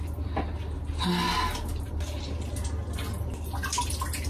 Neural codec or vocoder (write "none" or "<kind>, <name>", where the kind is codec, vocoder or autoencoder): none